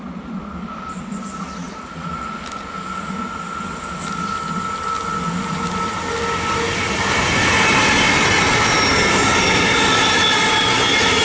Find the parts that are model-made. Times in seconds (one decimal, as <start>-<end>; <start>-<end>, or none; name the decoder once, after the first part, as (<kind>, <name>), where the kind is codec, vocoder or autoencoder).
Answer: 1.6-2.3 (vocoder, Vocos)